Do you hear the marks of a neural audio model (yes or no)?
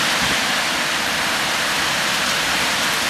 no